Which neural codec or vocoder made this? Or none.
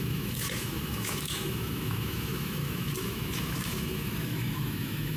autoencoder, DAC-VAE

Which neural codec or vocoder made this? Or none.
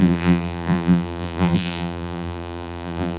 vocoder, BigVGAN v2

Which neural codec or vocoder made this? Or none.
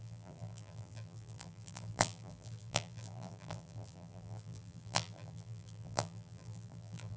vocoder, BigVGAN v2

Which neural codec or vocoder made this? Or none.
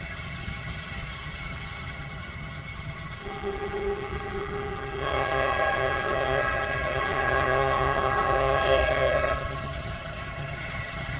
vocoder, HiFi-GAN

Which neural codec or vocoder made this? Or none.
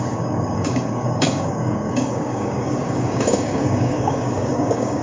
codec, DAC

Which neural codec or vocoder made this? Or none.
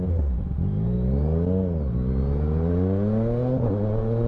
none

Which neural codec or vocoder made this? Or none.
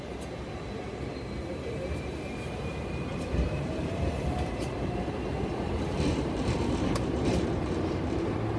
vocoder, BigVGAN v2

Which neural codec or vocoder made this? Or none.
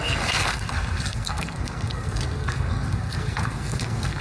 codec, SNAC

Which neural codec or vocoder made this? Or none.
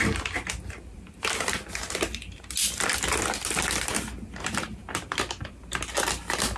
none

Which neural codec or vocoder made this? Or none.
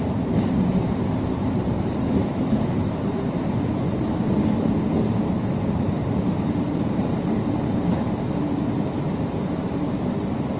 vocoder, BigVGAN v2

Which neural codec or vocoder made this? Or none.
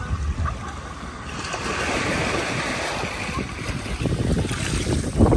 none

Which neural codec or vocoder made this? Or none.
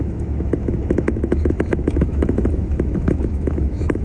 autoencoder, DAC-VAE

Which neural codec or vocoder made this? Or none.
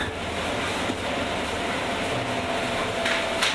none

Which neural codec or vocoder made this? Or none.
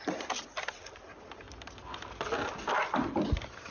none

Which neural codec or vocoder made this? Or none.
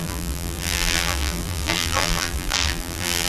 vocoder, BigVGAN v2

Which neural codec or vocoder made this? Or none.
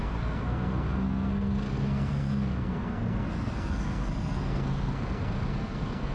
codec, SNAC